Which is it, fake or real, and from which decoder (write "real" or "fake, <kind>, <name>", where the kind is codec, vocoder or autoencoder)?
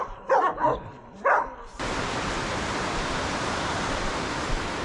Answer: fake, vocoder, BigVGAN v2